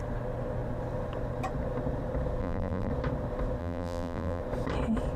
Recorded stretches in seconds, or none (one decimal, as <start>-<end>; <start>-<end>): 0.0-2.4; 2.9-3.6; 4.4-5.2